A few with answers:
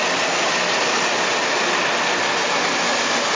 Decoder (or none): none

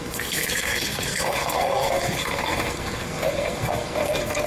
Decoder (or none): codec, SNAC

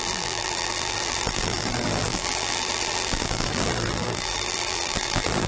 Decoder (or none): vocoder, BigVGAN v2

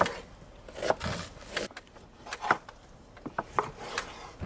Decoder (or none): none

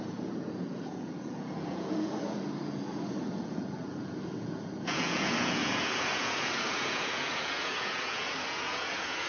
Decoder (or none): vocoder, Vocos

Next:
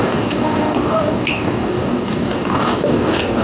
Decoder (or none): codec, DAC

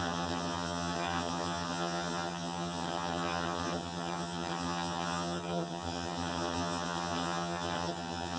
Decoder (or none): vocoder, HiFi-GAN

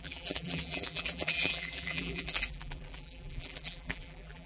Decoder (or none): vocoder, BigVGAN v2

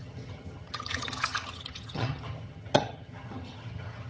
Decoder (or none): vocoder, HiFi-GAN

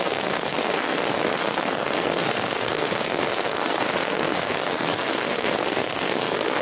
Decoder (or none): codec, SNAC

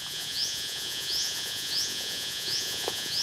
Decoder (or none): vocoder, Vocos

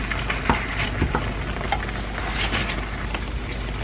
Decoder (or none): none